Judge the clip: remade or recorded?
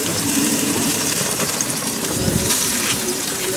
remade